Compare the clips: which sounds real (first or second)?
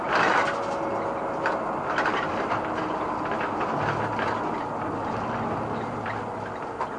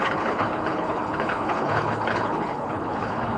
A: first